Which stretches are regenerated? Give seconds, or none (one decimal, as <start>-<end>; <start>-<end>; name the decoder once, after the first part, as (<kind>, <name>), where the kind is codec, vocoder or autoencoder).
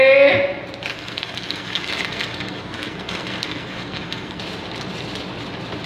0.9-4.4 (codec, SNAC)